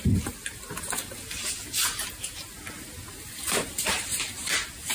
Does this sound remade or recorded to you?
recorded